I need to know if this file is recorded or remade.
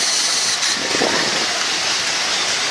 recorded